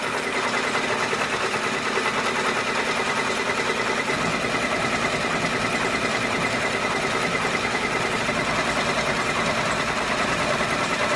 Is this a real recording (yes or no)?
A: yes